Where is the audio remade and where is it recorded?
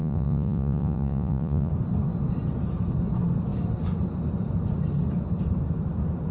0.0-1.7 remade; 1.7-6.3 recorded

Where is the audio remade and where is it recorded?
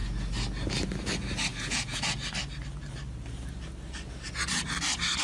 0.0-1.5 recorded; 1.5-2.0 remade; 2.0-5.2 recorded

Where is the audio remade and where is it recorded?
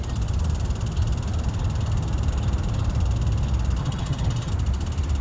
0.0-3.8 recorded; 3.8-4.5 remade; 4.5-5.2 recorded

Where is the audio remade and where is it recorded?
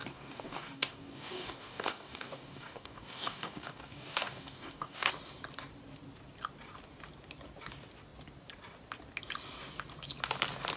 0.0-5.1 remade; 5.1-10.8 recorded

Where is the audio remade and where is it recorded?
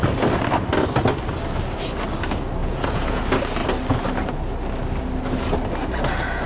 0.0-2.6 recorded; 2.6-3.2 remade; 3.2-6.5 recorded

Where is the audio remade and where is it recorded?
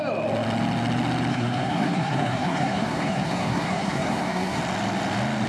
0.0-1.3 recorded; 1.3-4.6 remade; 4.6-5.5 recorded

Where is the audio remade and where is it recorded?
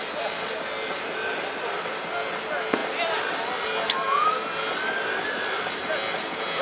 0.0-6.6 recorded